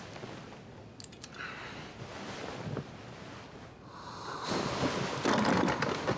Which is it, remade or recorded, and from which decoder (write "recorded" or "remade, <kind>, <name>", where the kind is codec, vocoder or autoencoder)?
recorded